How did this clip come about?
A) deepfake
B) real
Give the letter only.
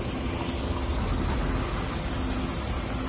B